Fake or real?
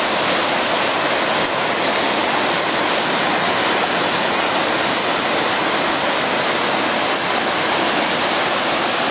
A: real